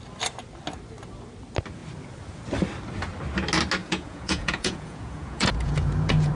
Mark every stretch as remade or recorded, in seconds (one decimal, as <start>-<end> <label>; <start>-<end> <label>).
0.0-3.8 recorded; 3.8-6.3 remade